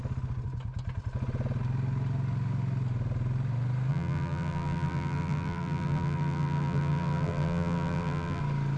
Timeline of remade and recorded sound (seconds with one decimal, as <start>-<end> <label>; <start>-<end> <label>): 0.0-3.9 recorded; 3.9-8.4 remade; 8.4-8.8 recorded